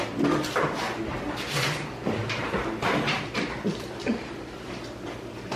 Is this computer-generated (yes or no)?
no